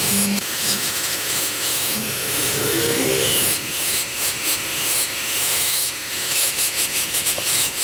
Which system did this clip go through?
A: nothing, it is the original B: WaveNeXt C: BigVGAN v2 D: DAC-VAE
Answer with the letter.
D